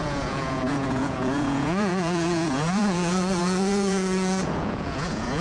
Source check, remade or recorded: remade